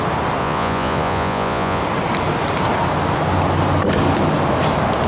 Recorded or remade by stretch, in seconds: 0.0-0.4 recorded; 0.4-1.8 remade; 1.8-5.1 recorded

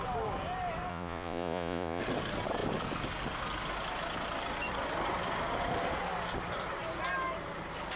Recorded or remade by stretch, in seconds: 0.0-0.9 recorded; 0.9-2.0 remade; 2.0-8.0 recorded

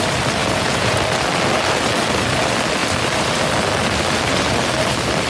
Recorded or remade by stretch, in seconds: 0.0-0.4 recorded; 0.4-1.0 remade; 1.0-5.3 recorded